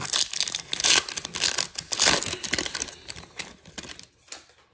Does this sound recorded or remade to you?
recorded